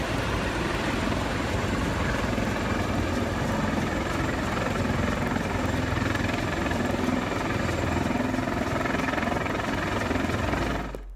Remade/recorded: recorded